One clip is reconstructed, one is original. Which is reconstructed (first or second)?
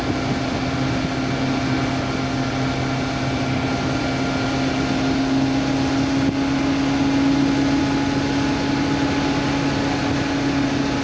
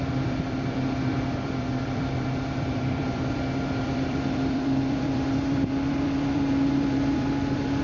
second